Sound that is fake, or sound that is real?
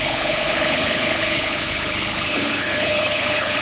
fake